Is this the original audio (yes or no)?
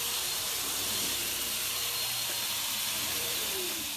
no